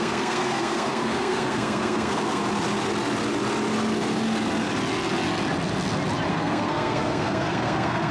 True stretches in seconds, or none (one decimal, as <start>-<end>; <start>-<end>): 2.4-6.3